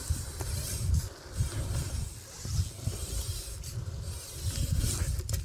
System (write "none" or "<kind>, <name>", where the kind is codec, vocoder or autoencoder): none